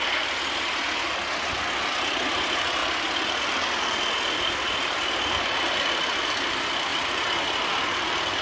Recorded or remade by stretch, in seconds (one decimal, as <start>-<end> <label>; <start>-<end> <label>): 0.0-8.4 recorded